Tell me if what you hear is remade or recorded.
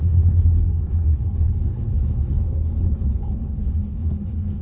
remade